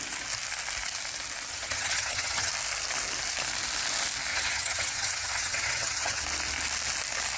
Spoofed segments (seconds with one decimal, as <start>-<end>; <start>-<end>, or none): 1.5-2.5; 4.3-6.2